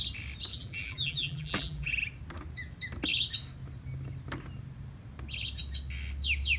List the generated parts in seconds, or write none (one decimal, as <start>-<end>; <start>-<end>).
0.5-1.9